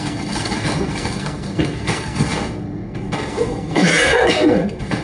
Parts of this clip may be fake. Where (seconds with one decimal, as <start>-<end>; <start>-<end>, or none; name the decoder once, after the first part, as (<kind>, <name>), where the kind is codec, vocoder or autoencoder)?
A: 0.0-5.0 (codec, SNAC)